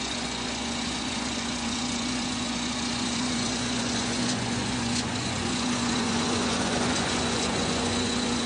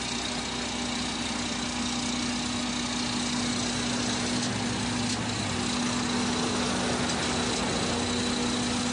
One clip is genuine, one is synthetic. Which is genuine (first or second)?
second